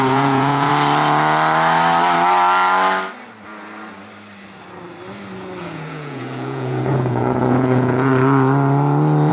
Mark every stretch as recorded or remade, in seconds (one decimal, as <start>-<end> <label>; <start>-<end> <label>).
0.0-0.7 remade; 0.7-5.6 recorded; 5.6-8.1 remade; 8.1-9.3 recorded